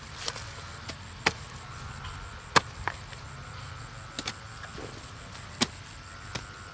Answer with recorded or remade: recorded